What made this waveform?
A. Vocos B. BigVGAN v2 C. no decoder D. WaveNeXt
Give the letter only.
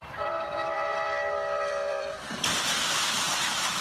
B